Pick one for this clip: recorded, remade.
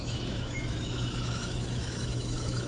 remade